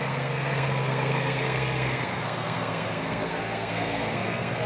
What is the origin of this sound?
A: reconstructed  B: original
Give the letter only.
A